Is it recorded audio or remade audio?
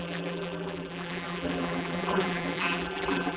remade